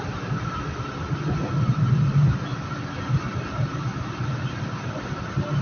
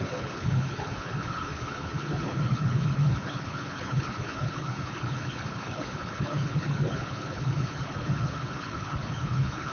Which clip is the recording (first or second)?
first